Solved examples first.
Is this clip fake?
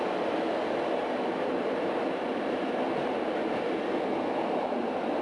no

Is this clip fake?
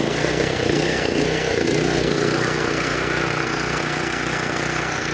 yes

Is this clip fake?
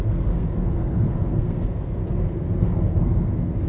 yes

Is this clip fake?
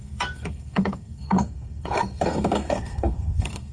yes